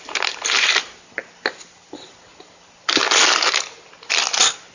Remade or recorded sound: recorded